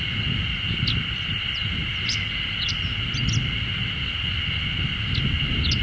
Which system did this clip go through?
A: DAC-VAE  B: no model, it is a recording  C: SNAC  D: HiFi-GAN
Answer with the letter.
B